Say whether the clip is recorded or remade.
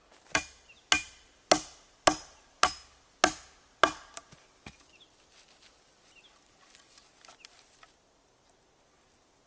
recorded